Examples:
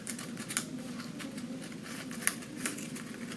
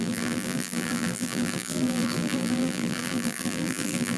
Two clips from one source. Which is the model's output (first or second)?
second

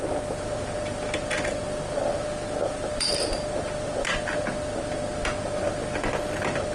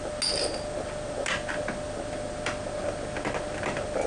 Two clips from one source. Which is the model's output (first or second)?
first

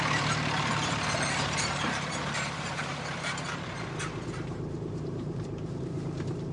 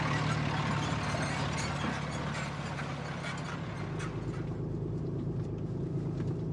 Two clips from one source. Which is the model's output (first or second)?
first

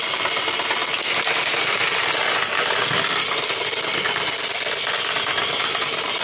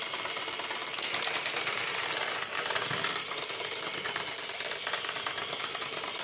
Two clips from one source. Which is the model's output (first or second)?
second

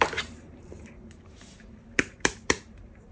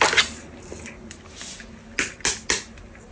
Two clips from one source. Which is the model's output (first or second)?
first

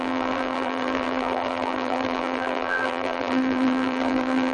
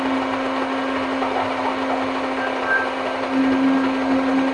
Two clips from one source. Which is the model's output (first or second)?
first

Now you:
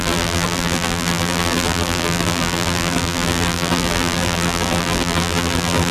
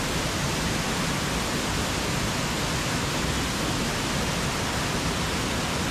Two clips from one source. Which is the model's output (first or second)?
first